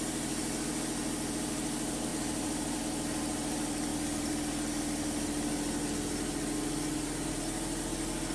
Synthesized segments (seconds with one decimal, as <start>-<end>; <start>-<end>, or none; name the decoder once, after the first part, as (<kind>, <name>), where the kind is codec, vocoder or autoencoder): 2.1-2.8 (vocoder, BigVGAN v2)